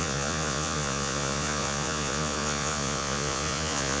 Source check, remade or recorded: remade